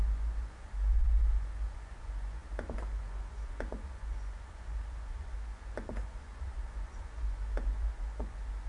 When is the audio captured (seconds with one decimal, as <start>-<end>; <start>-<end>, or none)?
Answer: none